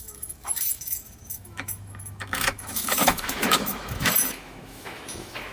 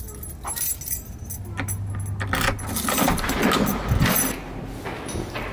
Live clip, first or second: second